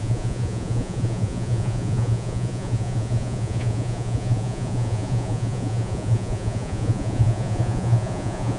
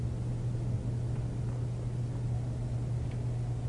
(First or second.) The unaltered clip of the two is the second